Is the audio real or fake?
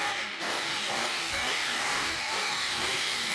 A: fake